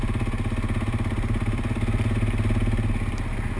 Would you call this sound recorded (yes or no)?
yes